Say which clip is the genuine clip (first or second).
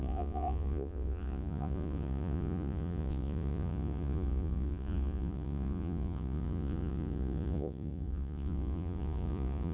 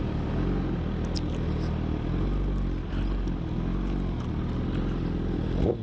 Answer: second